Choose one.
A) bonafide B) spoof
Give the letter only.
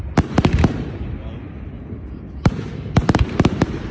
A